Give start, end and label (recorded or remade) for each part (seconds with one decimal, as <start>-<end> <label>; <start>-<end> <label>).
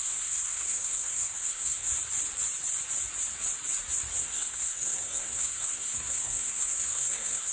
0.0-1.9 remade; 1.9-4.2 recorded; 4.2-7.5 remade